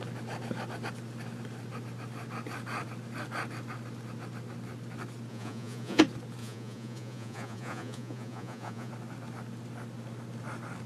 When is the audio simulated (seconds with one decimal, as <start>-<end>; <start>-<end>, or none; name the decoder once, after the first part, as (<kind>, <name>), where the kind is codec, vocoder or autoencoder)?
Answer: 5.3-6.0 (vocoder, Vocos); 6.4-8.9